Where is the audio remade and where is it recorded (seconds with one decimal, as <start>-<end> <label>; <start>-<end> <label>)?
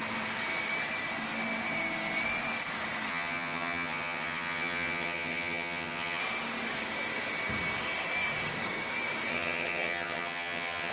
0.0-3.1 recorded; 3.1-6.2 remade; 6.2-9.3 recorded; 9.3-10.9 remade